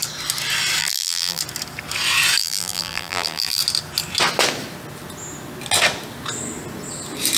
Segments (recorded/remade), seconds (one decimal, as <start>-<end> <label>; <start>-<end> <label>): 0.0-0.8 recorded; 0.8-1.4 remade; 1.4-2.4 recorded; 2.4-3.6 remade; 3.6-7.4 recorded